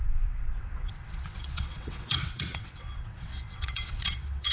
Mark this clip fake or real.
fake